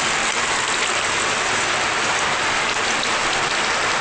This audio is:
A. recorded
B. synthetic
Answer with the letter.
A